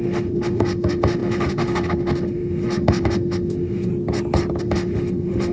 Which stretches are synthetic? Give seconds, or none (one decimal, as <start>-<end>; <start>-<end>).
0.0-3.9; 4.6-5.5